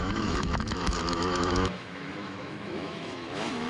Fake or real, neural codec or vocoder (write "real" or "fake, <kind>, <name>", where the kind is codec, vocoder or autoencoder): fake, autoencoder, DAC-VAE